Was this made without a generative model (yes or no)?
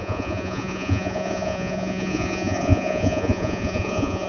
no